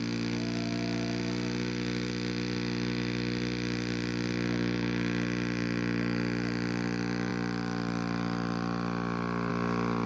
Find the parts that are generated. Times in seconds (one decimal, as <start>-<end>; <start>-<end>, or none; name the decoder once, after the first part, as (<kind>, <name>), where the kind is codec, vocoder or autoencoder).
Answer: none

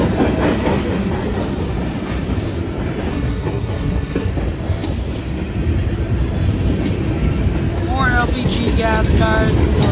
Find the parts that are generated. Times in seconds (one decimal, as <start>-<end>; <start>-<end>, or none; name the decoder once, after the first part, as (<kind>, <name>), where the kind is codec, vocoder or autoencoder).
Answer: 3.1-4.3 (codec, SNAC)